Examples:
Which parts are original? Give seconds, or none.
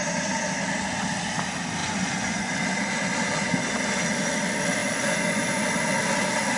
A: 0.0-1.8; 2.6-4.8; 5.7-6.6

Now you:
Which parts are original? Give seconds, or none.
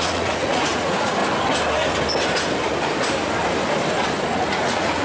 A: 1.2-4.2